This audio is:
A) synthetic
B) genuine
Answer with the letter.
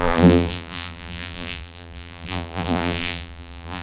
A